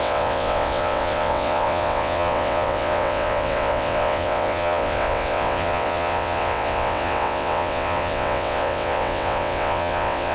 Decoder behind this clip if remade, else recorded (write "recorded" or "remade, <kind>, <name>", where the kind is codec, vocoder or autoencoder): remade, vocoder, WaveNeXt